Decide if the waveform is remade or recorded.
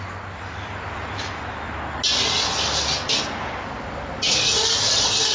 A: recorded